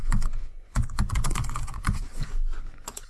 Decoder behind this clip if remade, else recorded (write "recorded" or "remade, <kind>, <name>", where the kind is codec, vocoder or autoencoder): remade, vocoder, Vocos